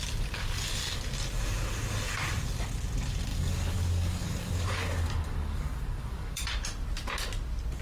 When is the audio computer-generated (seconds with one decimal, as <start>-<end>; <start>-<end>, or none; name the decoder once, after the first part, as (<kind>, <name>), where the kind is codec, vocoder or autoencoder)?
0.4-1.0 (codec, DAC); 3.3-6.4

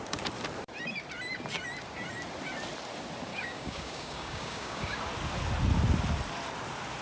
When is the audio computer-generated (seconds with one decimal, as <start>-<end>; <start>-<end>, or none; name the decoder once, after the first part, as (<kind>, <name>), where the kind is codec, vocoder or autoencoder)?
3.3-5.0 (codec, DAC)

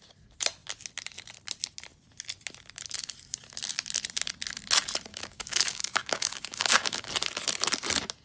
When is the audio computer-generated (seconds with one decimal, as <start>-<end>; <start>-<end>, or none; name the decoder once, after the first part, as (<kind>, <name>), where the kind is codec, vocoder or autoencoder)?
5.1-7.1 (codec, DAC)

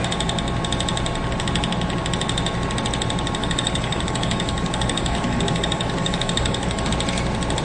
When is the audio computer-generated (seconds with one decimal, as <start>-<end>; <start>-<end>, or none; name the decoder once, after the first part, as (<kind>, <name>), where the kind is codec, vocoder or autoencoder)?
3.4-6.9 (codec, DAC)

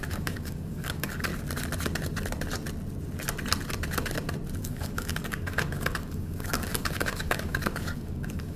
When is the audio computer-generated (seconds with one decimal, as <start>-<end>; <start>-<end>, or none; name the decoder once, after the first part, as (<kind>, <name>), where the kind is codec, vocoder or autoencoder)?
0.0-1.3 (codec, DAC); 4.6-8.6

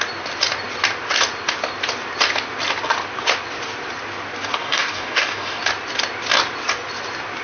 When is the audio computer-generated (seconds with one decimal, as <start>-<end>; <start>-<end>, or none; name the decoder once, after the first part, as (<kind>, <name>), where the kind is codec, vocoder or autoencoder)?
4.6-5.6 (codec, DAC)